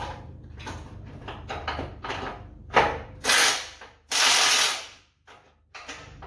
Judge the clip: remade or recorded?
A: remade